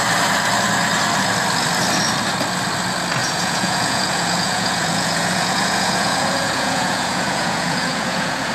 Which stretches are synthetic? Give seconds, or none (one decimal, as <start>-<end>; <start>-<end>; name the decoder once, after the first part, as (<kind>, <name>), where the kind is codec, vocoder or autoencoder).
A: 3.2-8.5 (vocoder, Vocos)